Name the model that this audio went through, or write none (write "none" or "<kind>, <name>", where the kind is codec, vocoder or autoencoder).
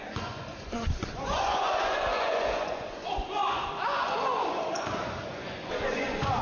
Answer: vocoder, Vocos